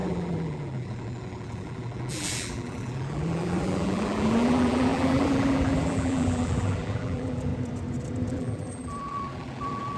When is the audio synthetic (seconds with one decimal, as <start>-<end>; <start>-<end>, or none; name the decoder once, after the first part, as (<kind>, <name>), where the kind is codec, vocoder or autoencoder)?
0.0-7.5 (vocoder, BigVGAN v2); 8.3-10.0